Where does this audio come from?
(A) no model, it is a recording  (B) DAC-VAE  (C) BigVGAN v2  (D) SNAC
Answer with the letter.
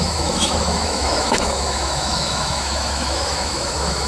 B